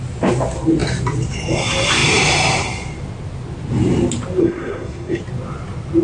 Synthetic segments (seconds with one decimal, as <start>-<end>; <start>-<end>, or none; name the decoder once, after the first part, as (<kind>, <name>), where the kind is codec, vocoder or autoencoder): 4.4-5.2 (codec, SNAC)